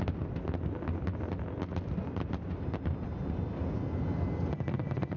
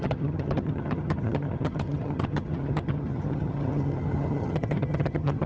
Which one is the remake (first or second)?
second